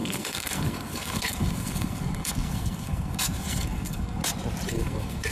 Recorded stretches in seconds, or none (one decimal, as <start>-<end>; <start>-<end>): 4.2-4.7